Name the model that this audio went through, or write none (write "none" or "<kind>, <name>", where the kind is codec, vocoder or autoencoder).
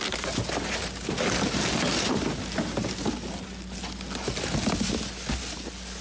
none